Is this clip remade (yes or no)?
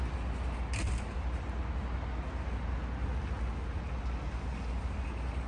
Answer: no